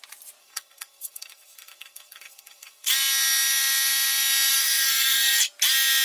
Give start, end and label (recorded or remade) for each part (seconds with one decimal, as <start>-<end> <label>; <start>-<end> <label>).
0.0-0.4 recorded; 0.4-2.9 remade; 2.9-4.5 recorded; 4.5-5.4 remade; 5.4-6.0 recorded